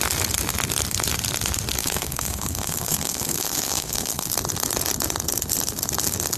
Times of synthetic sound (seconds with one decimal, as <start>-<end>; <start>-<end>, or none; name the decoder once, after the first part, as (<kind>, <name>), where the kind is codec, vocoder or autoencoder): 1.8-4.3 (codec, SNAC)